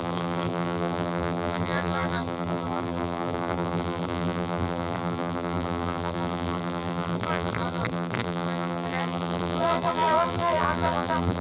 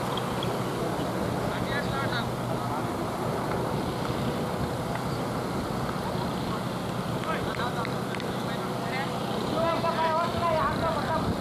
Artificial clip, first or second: first